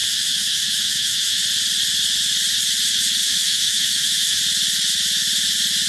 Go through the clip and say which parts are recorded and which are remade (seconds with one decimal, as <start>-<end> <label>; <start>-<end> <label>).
0.0-1.4 remade; 1.4-3.2 recorded; 3.2-4.4 remade; 4.4-5.9 recorded